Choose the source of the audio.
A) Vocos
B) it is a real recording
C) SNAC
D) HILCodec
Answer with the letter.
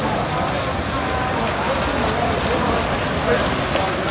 B